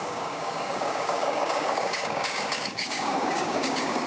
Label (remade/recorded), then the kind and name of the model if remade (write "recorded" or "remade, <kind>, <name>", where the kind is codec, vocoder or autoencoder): remade, codec, DAC